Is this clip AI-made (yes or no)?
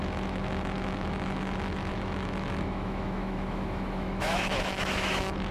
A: yes